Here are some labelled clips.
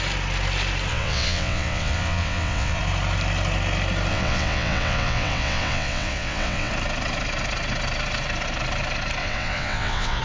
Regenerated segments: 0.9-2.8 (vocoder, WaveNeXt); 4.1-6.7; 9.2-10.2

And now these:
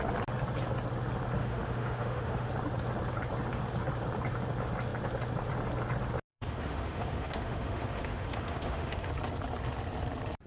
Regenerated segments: 1.4-2.5 (autoencoder, DAC-VAE); 6.3-9.1

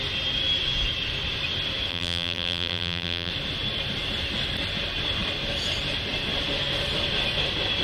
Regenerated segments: 1.9-3.3 (vocoder, BigVGAN v2)

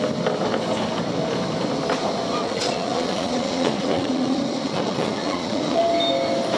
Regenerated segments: 2.4-5.8 (vocoder, Vocos)

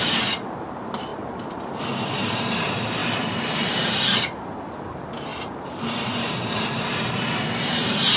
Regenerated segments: 0.0-8.2 (vocoder, BigVGAN v2)

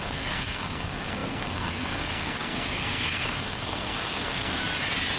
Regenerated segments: 0.0-4.6 (codec, SNAC)

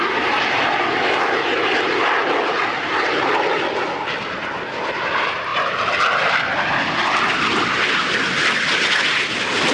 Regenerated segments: none